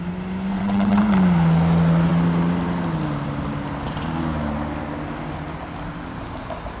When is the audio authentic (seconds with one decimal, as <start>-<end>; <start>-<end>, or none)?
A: 0.0-0.5; 1.0-6.8